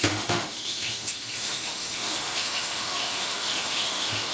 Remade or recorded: remade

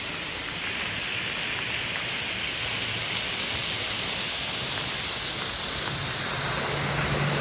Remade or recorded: recorded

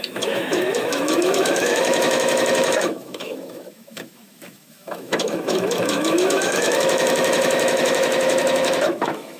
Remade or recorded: remade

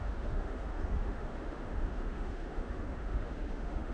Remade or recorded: remade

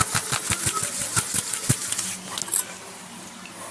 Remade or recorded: recorded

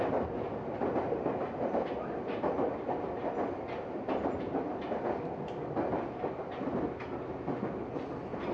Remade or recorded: recorded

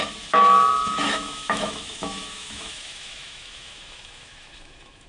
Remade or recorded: remade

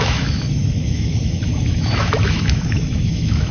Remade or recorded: remade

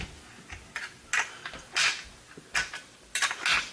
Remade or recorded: recorded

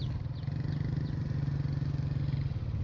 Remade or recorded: recorded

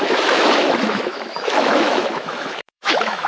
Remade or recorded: remade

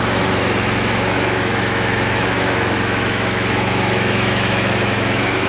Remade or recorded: remade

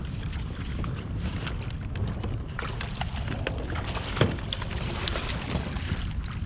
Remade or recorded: recorded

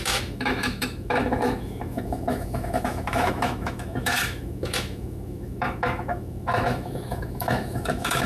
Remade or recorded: remade